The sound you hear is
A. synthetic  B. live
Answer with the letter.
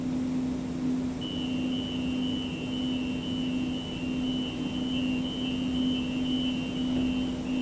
B